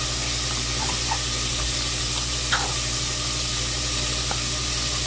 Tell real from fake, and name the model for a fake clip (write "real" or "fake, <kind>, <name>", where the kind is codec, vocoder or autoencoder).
real